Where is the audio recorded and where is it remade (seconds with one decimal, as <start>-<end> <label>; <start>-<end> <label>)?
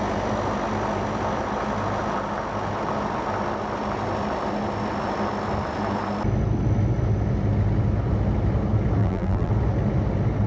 0.0-9.0 recorded; 9.0-9.5 remade; 9.5-10.5 recorded